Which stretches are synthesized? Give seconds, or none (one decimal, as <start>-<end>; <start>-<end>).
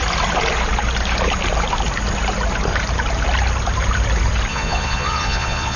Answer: 4.5-5.8